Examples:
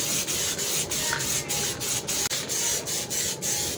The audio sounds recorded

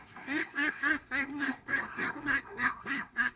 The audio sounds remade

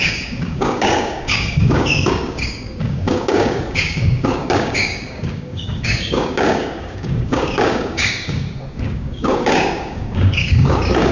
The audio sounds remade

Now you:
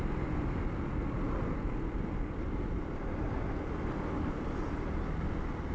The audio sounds recorded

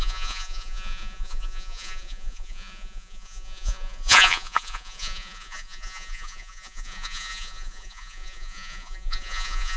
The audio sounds remade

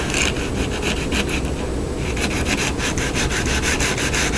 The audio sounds recorded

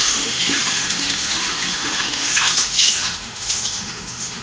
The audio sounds remade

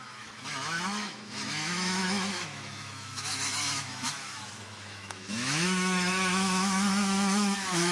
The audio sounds remade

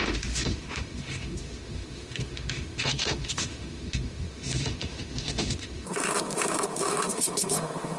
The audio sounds remade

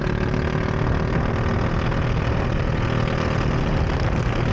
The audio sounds recorded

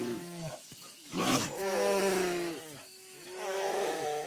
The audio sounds remade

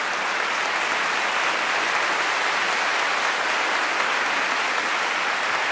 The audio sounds recorded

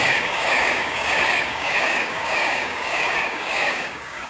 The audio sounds remade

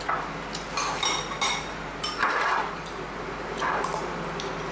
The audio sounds recorded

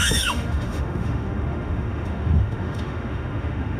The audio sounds remade